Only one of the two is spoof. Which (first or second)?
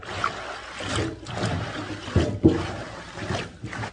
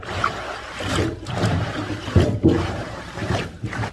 second